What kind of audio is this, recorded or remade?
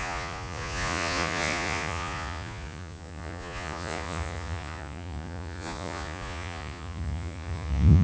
remade